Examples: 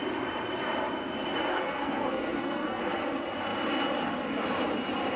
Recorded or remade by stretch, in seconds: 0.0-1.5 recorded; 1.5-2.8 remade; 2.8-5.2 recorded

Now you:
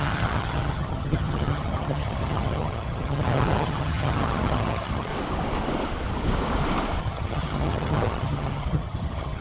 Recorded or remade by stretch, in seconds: 0.0-5.1 remade; 5.1-7.0 recorded; 7.0-9.4 remade

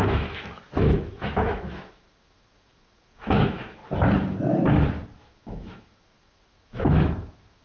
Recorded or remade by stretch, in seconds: 0.0-3.8 remade; 3.8-5.3 recorded; 5.3-7.6 remade

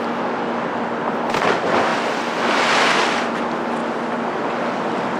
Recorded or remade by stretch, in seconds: 0.0-5.2 recorded

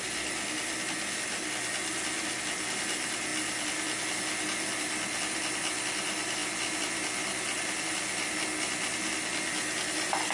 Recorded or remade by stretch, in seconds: 0.0-10.3 recorded